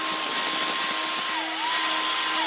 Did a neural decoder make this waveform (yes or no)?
no